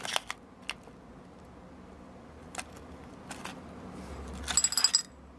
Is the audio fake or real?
real